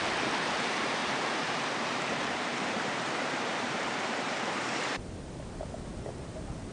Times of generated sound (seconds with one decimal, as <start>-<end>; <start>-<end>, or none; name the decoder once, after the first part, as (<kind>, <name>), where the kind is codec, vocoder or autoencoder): 1.0-5.0 (vocoder, BigVGAN v2)